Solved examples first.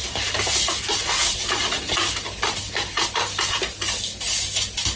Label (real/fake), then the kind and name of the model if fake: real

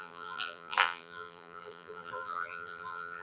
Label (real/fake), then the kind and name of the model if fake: fake, vocoder, BigVGAN v2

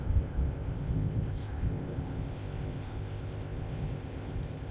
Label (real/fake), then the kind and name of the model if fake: fake, codec, ZipCodec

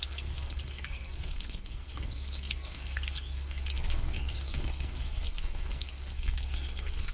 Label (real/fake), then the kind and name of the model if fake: fake, codec, SNAC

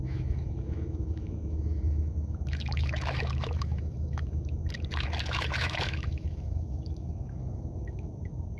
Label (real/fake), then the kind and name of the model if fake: fake, autoencoder, DAC-VAE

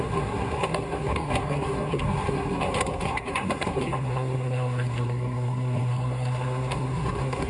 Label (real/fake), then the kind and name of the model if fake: fake, codec, SNAC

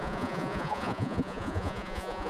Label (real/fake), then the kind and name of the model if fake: fake, vocoder, Vocos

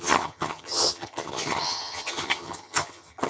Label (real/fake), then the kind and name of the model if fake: fake, vocoder, HiFi-GAN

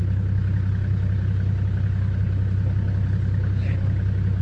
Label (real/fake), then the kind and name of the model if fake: real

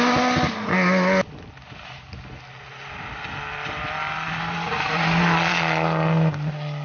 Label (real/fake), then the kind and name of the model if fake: real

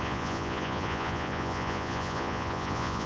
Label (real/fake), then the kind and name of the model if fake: fake, vocoder, Vocos